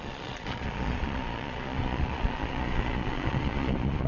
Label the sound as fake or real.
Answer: fake